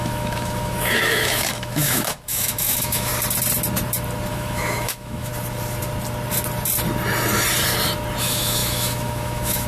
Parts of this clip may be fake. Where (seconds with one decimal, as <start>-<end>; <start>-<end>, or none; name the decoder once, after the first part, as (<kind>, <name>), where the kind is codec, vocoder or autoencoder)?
0.0-3.1 (autoencoder, DAC-VAE); 4.3-5.3; 8.2-9.7